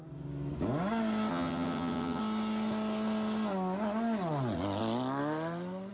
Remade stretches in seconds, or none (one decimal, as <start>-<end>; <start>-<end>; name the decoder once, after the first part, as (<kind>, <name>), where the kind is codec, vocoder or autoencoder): 1.3-2.2 (vocoder, HiFi-GAN)